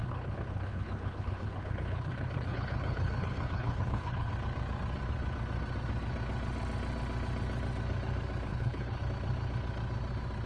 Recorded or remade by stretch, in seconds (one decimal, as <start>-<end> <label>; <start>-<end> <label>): 0.0-4.3 remade; 4.3-8.5 recorded; 8.5-9.0 remade; 9.0-10.5 recorded